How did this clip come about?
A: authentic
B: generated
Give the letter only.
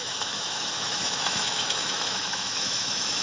B